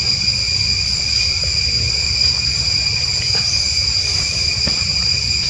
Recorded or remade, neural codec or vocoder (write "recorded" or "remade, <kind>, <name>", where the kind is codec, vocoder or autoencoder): recorded